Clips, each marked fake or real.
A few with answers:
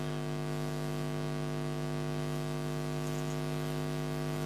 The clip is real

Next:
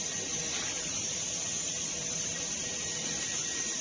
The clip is fake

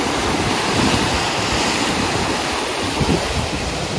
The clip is fake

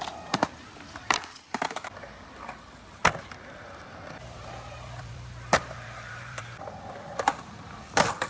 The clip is fake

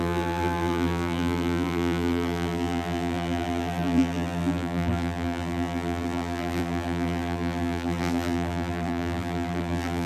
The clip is fake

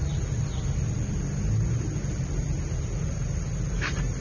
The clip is real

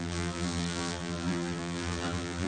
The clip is fake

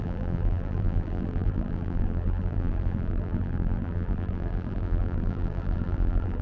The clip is fake